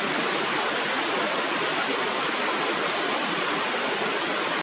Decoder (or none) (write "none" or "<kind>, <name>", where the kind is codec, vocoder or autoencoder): none